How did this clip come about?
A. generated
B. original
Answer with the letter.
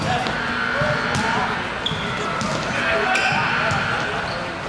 B